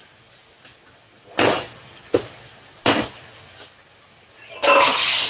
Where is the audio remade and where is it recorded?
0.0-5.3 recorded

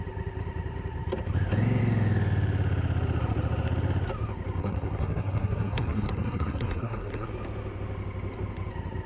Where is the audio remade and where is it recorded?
0.0-4.6 recorded; 4.6-7.3 remade; 7.3-9.1 recorded

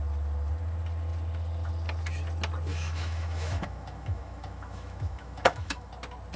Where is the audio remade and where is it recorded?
0.0-2.7 recorded; 2.7-5.9 remade; 5.9-6.4 recorded

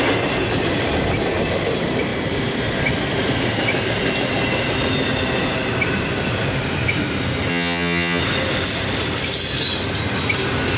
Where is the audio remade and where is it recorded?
0.0-7.5 recorded; 7.5-8.2 remade; 8.2-10.8 recorded

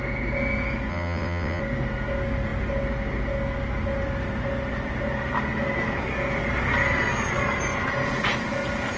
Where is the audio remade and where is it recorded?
0.0-0.9 recorded; 0.9-1.6 remade; 1.6-9.0 recorded